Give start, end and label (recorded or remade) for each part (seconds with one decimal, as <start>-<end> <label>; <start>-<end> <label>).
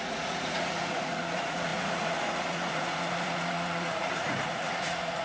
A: 0.0-5.2 remade